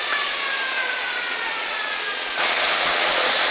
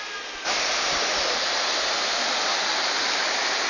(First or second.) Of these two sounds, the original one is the second